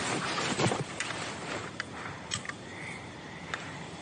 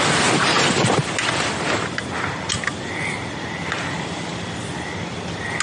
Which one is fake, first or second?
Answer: first